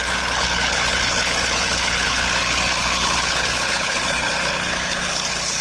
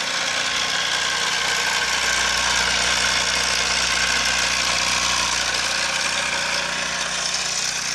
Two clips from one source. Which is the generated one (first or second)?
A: first